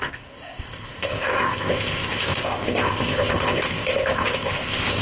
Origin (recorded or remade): remade